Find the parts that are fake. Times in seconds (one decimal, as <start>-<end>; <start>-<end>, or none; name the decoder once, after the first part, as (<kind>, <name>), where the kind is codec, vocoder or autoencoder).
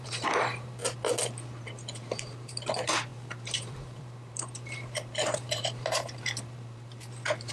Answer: 0.0-0.8 (vocoder, BigVGAN v2); 1.3-7.5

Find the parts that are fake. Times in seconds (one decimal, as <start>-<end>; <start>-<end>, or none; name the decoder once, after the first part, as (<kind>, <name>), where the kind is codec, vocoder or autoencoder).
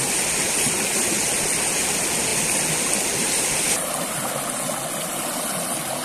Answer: none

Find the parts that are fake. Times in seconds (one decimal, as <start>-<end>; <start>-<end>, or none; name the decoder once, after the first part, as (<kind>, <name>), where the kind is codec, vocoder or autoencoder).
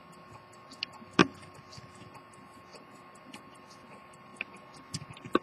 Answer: 2.7-3.6 (vocoder, BigVGAN v2)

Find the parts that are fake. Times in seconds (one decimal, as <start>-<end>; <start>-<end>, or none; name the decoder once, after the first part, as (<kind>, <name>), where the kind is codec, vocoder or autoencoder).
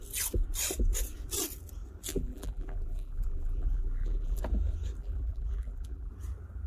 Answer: 2.1-4.4 (vocoder, BigVGAN v2); 5.0-6.1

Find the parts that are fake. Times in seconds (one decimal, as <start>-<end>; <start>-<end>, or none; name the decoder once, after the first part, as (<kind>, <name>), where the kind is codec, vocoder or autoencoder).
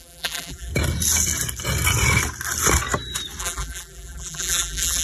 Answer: 0.0-0.7 (vocoder, BigVGAN v2); 3.4-5.0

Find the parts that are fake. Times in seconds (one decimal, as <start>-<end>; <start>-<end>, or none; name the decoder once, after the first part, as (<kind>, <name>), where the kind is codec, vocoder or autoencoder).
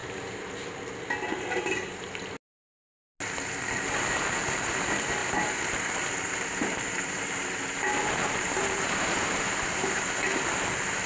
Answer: 0.0-0.5 (vocoder, BigVGAN v2); 1.3-2.1; 5.2-10.1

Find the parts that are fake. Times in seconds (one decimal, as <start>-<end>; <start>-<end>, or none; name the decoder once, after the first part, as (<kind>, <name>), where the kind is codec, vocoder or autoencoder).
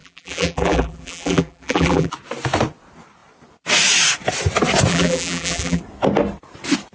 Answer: 0.0-2.1 (vocoder, BigVGAN v2); 4.9-5.8